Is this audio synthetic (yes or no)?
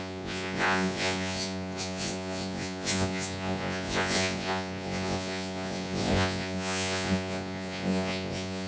yes